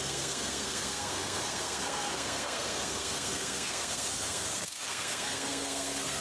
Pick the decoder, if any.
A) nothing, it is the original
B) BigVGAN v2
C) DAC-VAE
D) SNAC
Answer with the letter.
D